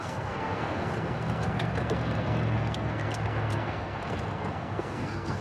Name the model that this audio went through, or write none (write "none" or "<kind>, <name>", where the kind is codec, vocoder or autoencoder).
codec, SNAC